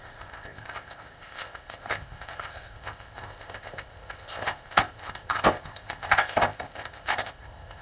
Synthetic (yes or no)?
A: yes